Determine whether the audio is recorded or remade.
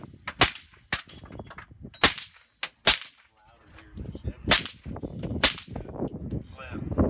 recorded